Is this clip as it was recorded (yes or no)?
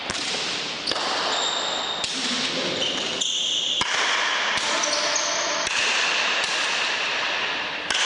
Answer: yes